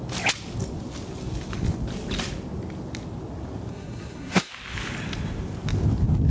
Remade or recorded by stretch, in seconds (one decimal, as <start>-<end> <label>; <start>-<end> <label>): 0.0-3.7 recorded; 3.7-4.5 remade; 4.5-6.3 recorded